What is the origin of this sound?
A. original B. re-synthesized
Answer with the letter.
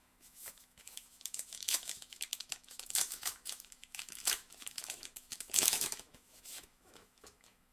B